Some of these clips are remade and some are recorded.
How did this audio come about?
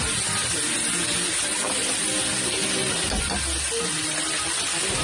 recorded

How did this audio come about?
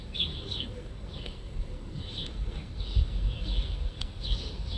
remade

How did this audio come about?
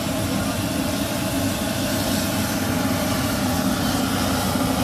recorded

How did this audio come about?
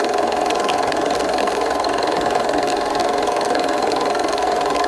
remade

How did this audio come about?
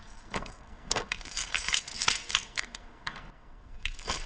remade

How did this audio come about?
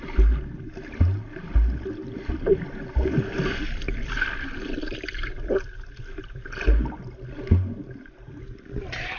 recorded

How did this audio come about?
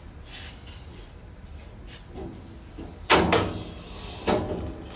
recorded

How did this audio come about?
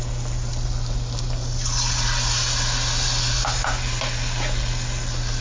recorded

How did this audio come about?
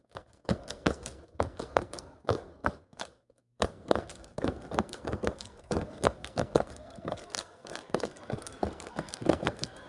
remade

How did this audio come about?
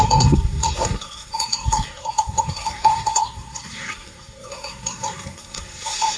remade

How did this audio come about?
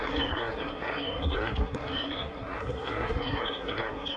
remade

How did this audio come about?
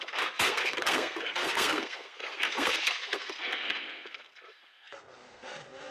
remade